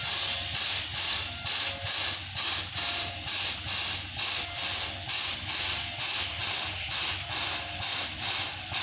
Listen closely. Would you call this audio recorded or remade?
recorded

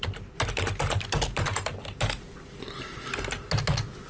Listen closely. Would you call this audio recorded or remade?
recorded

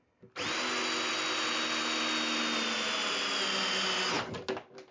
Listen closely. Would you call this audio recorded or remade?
recorded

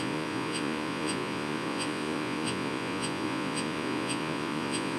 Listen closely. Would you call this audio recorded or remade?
remade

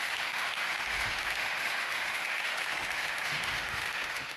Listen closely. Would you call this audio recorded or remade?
remade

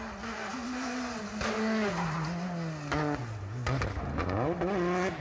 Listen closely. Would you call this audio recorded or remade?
recorded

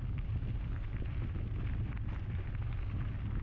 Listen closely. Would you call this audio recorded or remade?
recorded